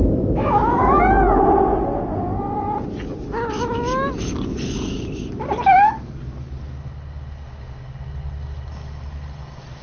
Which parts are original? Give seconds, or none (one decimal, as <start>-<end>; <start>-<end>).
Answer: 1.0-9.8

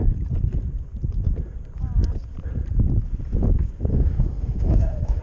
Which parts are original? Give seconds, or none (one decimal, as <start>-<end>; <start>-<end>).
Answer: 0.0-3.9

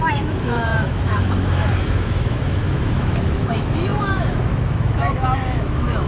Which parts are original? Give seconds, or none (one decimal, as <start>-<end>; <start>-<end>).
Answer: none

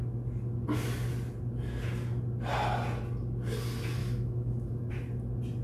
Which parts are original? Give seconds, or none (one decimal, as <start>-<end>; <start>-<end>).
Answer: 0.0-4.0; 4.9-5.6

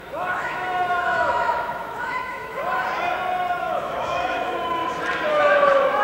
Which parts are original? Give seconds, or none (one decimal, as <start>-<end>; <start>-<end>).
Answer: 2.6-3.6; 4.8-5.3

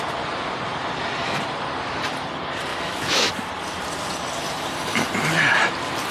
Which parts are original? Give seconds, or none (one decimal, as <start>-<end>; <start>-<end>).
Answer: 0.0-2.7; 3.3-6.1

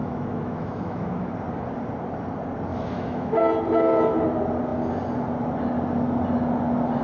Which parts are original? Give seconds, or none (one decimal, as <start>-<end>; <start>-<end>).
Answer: 1.3-2.7; 3.4-7.0